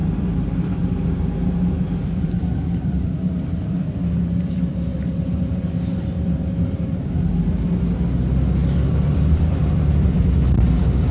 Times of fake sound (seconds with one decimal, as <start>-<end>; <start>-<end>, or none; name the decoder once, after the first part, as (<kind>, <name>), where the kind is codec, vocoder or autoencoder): 0.0-5.1 (vocoder, BigVGAN v2); 8.6-10.4